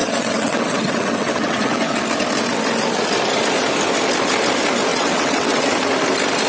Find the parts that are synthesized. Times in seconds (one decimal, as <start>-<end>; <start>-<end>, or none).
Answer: 0.0-2.0; 4.9-5.7